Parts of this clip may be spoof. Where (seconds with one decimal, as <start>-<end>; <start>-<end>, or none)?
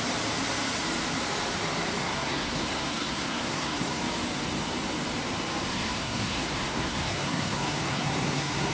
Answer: 2.0-4.0; 5.7-8.7